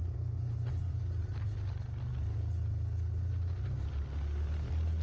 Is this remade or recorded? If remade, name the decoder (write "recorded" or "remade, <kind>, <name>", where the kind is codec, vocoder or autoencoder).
recorded